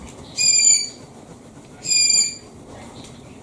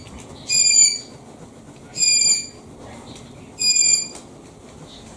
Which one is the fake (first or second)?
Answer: first